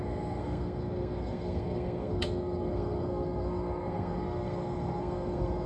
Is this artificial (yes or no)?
yes